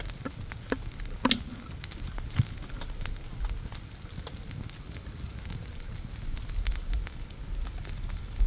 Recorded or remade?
recorded